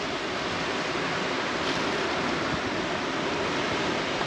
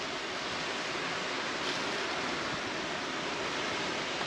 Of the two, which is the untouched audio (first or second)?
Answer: second